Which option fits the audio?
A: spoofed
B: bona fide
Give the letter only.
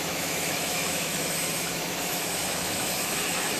A